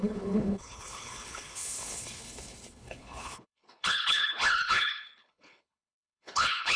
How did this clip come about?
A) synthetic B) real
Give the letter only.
A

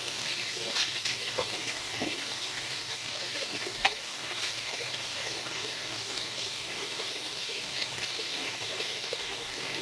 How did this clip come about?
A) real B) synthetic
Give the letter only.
B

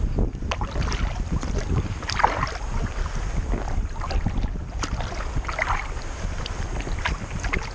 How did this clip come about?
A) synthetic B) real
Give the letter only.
B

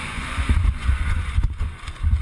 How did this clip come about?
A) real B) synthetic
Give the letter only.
B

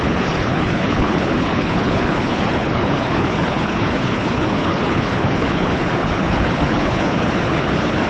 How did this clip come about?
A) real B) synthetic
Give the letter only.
B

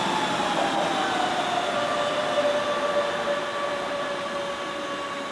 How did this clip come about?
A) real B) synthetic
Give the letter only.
A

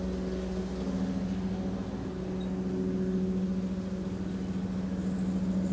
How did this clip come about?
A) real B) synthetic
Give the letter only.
A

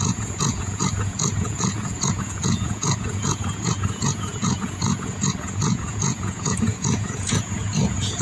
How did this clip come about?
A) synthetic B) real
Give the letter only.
A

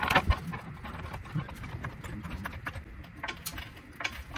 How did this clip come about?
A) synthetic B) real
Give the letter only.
B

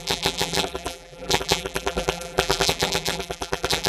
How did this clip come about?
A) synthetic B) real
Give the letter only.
A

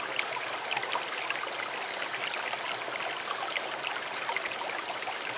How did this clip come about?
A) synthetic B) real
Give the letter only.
B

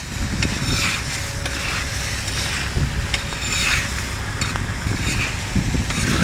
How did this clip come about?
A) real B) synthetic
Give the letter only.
A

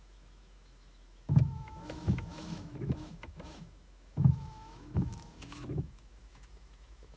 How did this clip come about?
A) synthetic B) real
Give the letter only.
A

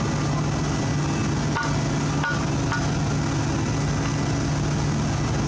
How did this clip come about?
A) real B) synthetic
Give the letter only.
A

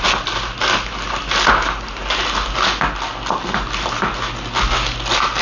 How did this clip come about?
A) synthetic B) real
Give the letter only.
B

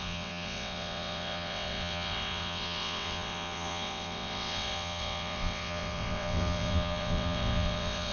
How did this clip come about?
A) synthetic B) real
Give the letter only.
A